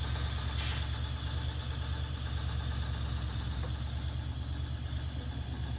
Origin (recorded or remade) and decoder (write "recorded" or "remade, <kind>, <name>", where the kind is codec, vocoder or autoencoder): recorded